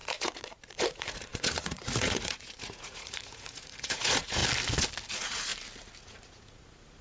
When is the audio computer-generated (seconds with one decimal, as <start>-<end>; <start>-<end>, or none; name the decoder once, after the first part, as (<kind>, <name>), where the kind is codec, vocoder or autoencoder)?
0.0-4.4 (vocoder, Vocos); 5.1-5.5; 6.0-7.0